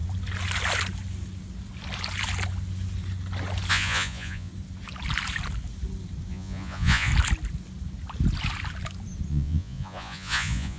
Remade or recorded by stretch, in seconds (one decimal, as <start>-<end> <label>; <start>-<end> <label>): 0.0-3.7 recorded; 3.7-4.5 remade; 4.5-6.3 recorded; 6.3-7.1 remade; 7.1-9.3 recorded; 9.3-10.8 remade